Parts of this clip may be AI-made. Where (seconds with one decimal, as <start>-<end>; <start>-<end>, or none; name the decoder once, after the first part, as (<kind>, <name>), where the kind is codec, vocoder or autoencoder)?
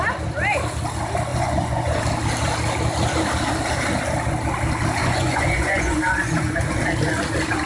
1.3-2.0 (vocoder, Vocos); 5.0-6.6